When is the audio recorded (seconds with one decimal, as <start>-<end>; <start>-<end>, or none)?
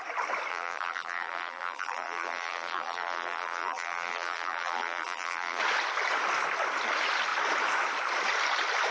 0.0-0.5; 5.6-8.9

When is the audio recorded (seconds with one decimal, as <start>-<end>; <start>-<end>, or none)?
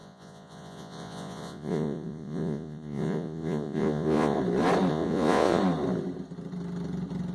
4.4-4.9; 5.6-7.3